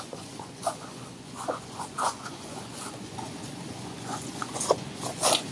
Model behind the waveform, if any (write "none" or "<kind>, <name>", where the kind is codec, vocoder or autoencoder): vocoder, Vocos